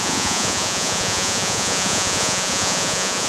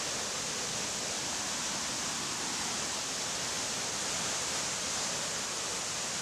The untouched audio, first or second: second